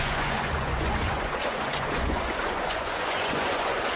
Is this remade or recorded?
remade